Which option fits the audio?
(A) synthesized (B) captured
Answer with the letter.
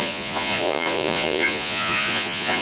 A